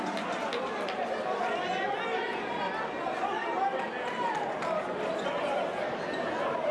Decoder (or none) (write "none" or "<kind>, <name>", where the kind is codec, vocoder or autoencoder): none